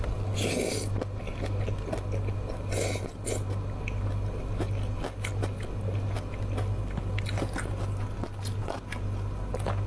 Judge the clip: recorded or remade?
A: recorded